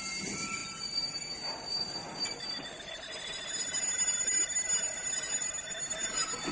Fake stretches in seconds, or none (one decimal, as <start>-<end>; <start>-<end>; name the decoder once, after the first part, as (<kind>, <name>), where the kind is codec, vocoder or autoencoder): none